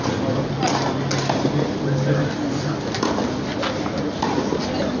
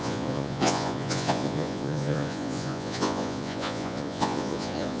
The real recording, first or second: first